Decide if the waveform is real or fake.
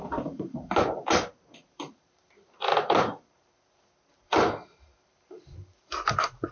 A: fake